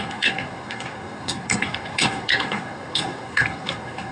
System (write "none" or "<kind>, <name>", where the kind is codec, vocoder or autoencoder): codec, SNAC